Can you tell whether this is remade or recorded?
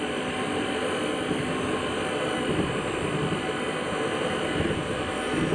recorded